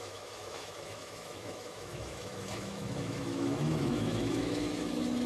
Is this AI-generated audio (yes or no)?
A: yes